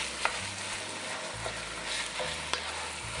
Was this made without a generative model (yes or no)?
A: yes